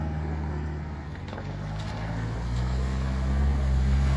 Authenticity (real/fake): fake